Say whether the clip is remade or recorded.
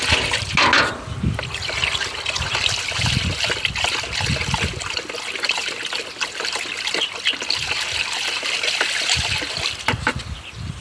recorded